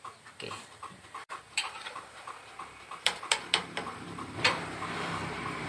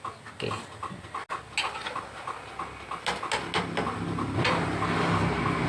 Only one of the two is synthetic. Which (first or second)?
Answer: first